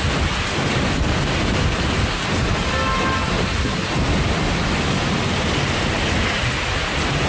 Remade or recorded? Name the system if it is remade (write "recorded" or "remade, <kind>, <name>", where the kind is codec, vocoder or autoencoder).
recorded